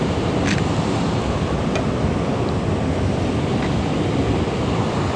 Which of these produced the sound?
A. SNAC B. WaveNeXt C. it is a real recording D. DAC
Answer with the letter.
C